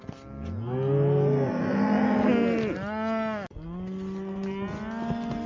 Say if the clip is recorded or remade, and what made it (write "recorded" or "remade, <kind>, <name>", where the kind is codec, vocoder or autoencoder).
recorded